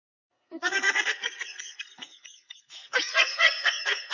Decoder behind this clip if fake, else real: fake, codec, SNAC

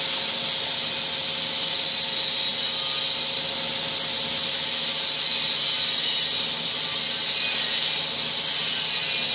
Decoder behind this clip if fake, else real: real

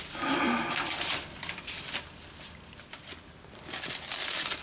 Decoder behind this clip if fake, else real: real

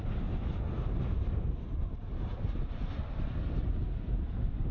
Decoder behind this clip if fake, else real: real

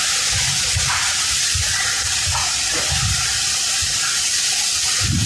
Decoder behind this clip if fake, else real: real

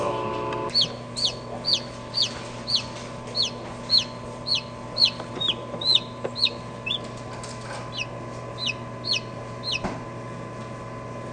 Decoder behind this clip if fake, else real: real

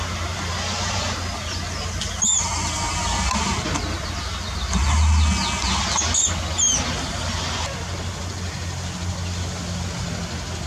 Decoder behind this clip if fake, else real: real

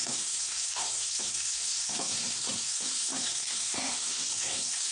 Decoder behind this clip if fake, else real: fake, codec, SNAC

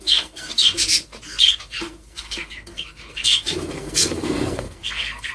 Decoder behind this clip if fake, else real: fake, codec, SNAC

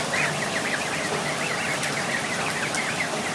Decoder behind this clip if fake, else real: real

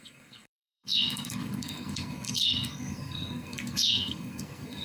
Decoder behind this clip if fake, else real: fake, codec, SNAC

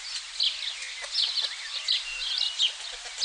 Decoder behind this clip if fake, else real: real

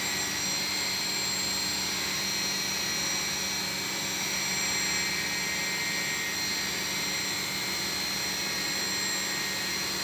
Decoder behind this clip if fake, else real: real